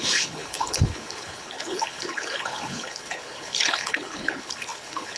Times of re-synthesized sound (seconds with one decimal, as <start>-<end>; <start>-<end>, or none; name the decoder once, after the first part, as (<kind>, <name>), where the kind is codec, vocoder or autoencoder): 0.0-5.2 (codec, HILCodec)